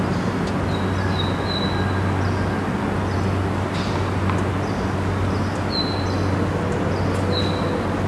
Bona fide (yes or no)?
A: yes